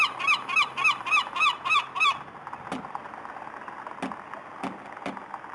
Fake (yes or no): no